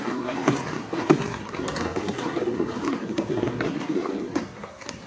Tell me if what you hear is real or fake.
fake